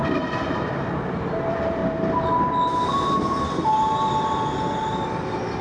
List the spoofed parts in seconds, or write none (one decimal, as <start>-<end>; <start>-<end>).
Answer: 0.0-1.8

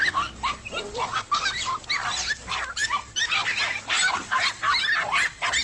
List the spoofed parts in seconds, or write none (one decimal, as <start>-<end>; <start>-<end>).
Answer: none